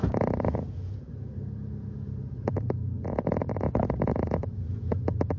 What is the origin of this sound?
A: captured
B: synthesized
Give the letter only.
B